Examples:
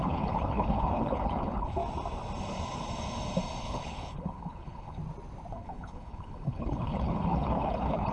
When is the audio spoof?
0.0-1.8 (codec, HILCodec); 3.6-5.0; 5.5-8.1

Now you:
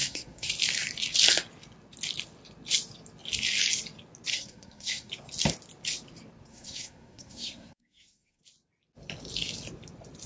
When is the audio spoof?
0.0-0.5 (codec, SNAC); 4.3-5.1; 6.5-8.4

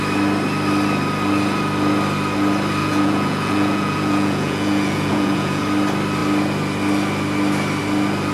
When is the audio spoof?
2.8-5.6 (vocoder, Vocos)

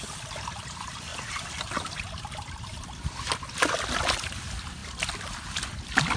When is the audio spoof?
0.0-1.1 (vocoder, BigVGAN v2); 2.0-4.8